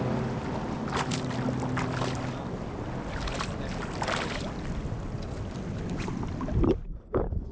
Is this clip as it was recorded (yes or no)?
yes